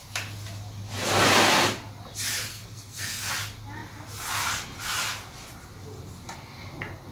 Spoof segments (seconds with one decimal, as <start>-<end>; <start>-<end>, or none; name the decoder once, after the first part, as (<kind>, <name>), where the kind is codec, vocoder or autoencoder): 2.5-3.3 (codec, SNAC)